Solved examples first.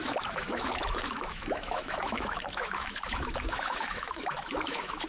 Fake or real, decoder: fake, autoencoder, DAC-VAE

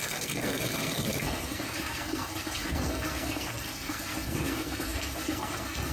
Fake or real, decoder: fake, codec, SNAC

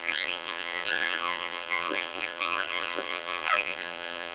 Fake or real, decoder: fake, vocoder, BigVGAN v2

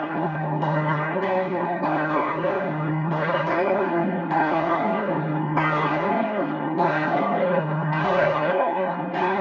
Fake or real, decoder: fake, codec, SNAC